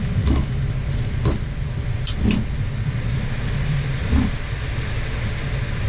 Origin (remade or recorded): recorded